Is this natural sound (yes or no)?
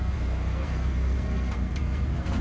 no